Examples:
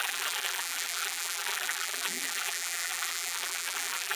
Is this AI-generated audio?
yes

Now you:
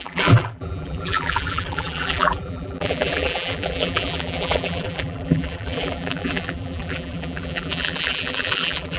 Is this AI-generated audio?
yes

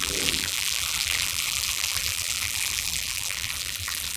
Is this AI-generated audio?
yes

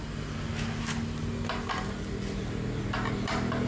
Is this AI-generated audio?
no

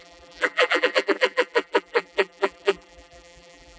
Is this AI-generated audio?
yes